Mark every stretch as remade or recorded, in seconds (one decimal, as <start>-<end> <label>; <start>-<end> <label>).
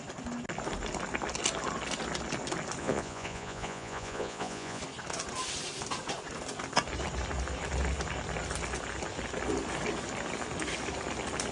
0.0-2.8 recorded; 2.8-4.8 remade; 4.8-11.5 recorded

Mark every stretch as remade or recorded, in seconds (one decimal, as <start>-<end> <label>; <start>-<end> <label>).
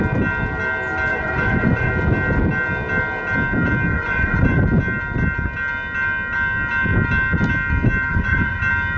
0.0-1.1 recorded; 1.1-1.9 remade; 1.9-3.9 recorded; 3.9-4.6 remade; 4.6-8.1 recorded; 8.1-8.6 remade; 8.6-9.0 recorded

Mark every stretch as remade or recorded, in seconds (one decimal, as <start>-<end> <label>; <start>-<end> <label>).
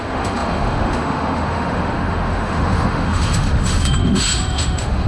0.0-5.1 remade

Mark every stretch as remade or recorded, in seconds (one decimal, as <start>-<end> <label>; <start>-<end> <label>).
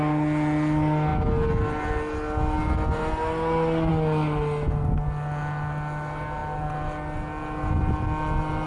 0.0-8.7 recorded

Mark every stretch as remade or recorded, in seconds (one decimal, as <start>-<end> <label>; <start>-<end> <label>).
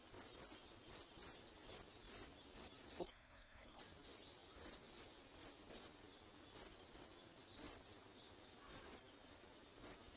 0.0-3.0 recorded; 3.0-3.8 remade; 3.8-10.2 recorded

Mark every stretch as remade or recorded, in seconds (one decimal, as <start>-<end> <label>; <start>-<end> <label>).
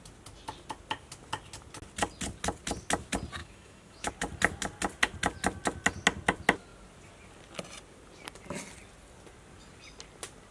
0.0-3.4 recorded; 3.4-4.1 remade; 4.1-10.5 recorded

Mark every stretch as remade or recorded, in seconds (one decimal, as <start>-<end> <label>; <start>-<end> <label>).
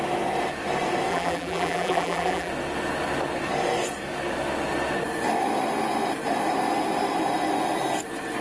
0.0-1.1 recorded; 1.1-2.5 remade; 2.5-8.4 recorded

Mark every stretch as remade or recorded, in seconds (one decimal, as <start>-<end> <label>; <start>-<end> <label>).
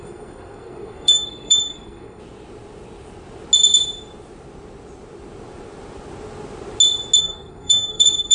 0.0-2.2 remade; 2.2-7.2 recorded; 7.2-8.3 remade